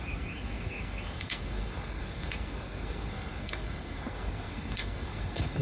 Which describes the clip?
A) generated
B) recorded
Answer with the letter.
A